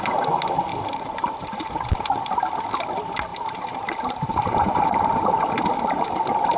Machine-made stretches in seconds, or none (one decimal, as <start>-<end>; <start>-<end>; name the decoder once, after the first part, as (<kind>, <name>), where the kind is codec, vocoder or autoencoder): 0.7-1.6 (vocoder, BigVGAN v2); 3.3-5.3